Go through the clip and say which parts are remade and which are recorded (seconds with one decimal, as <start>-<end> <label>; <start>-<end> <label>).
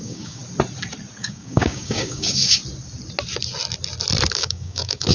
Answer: 0.0-0.4 remade; 0.4-1.2 recorded; 1.2-2.6 remade; 2.6-4.3 recorded; 4.3-5.1 remade